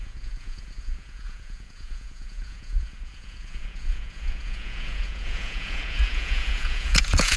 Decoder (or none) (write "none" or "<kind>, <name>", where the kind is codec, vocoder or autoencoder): vocoder, Vocos